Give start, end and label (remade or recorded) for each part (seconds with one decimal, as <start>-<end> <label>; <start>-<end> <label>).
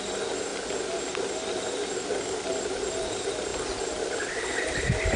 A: 0.0-5.2 recorded